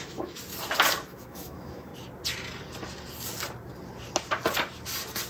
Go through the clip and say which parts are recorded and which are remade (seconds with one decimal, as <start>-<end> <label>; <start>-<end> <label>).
0.0-0.4 remade; 0.4-1.1 recorded; 1.1-1.9 remade; 1.9-5.3 recorded